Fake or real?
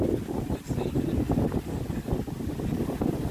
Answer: fake